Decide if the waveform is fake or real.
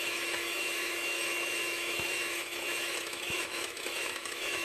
fake